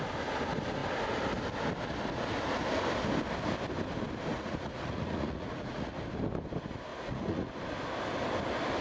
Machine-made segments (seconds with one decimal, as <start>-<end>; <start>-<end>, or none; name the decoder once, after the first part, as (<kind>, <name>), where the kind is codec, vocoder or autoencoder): 4.3-6.0 (vocoder, Vocos); 6.9-7.5